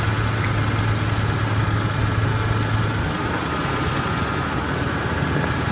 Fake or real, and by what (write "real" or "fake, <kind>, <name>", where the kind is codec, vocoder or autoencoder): real